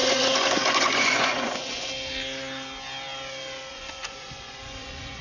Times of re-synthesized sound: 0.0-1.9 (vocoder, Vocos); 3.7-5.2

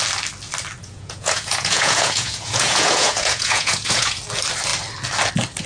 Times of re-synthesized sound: 0.8-4.2 (vocoder, Vocos)

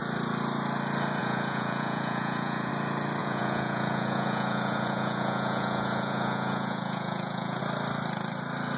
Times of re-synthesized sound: 1.2-2.7 (vocoder, Vocos); 3.2-7.6

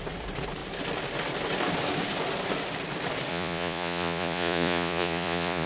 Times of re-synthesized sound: 3.3-5.7 (vocoder, Vocos)

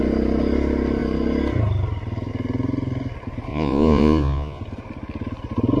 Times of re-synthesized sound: 3.5-4.6 (vocoder, Vocos)

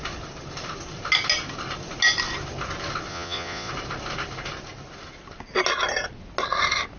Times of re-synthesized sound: 3.1-3.7 (vocoder, Vocos)

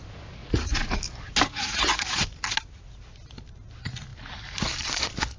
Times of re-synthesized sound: 0.4-1.0 (vocoder, Vocos); 1.5-2.2

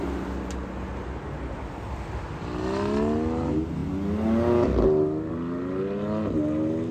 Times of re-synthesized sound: none